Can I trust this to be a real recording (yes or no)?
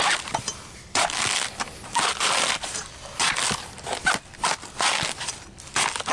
yes